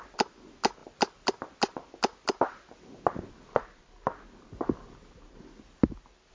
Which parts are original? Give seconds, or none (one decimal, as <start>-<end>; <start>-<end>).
0.0-6.3